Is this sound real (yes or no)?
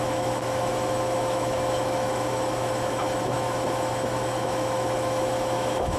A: no